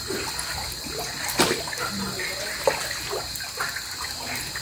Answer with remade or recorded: recorded